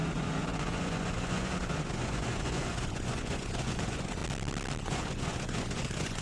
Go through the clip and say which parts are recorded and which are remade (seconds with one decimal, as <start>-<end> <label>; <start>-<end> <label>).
0.0-4.2 remade; 4.2-4.8 recorded; 4.8-6.2 remade